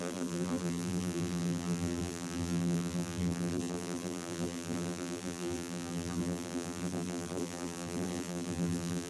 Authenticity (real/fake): fake